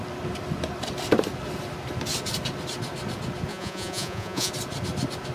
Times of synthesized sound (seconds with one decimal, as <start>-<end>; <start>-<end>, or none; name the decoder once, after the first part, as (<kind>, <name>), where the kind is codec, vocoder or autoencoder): 3.5-4.5 (vocoder, Vocos)